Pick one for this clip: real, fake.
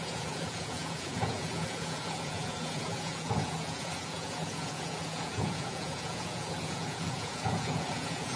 fake